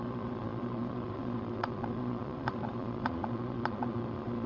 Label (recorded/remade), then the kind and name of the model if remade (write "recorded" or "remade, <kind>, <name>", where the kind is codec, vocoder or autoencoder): remade, vocoder, Vocos